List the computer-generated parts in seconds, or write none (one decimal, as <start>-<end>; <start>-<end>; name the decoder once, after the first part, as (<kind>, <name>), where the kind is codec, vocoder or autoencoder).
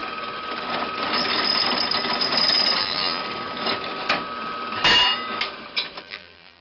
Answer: 2.8-3.2 (vocoder, BigVGAN v2); 6.0-6.6